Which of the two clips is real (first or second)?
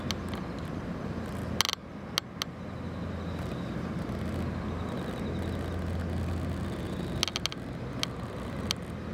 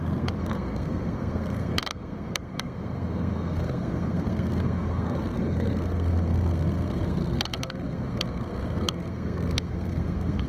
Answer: first